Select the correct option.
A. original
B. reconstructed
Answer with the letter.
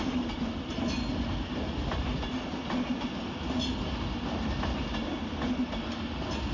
A